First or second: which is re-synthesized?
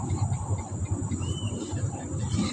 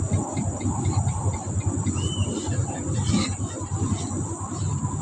first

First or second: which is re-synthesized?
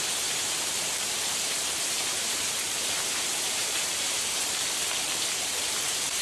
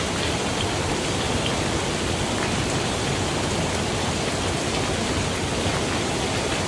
first